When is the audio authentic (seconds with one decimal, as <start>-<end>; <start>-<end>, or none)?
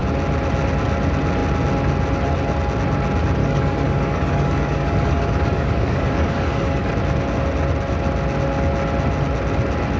0.0-3.4; 6.9-10.0